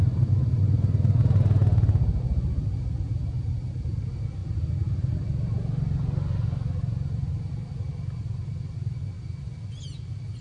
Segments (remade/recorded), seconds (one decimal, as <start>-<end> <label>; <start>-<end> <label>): 0.0-10.4 recorded